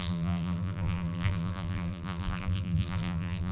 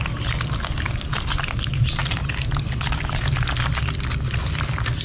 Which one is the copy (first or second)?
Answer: first